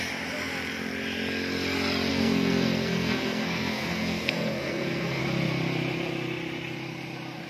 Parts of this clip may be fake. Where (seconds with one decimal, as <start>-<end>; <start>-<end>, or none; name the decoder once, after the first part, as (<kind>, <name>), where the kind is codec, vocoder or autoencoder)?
2.1-5.2 (codec, SNAC)